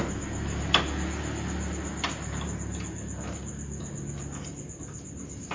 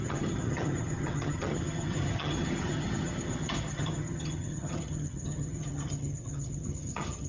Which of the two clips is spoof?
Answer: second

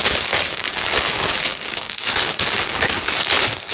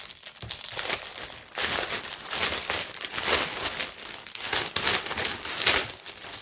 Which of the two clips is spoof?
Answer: first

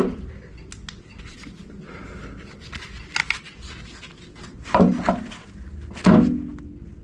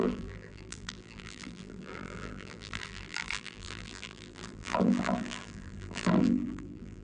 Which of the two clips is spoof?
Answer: second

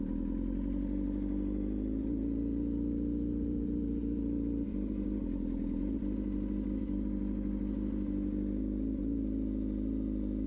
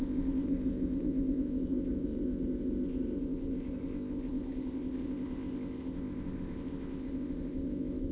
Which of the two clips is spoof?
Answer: second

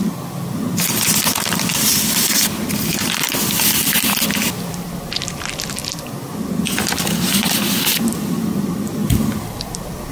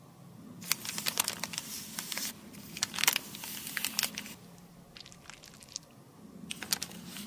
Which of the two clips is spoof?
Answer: first